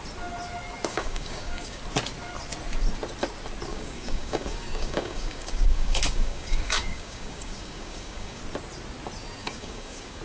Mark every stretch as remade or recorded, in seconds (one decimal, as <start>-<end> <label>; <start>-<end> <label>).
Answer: 0.0-0.9 recorded; 0.9-1.8 remade; 1.8-3.7 recorded; 3.7-8.4 remade; 8.4-9.4 recorded; 9.4-10.2 remade